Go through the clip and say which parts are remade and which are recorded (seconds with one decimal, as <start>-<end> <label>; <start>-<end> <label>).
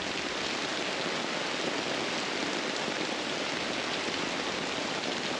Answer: 0.0-5.4 recorded